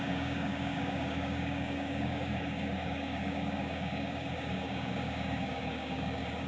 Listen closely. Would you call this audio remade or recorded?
remade